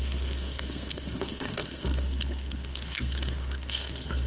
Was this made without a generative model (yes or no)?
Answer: no